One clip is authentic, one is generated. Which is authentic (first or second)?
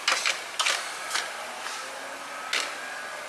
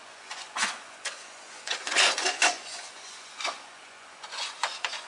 first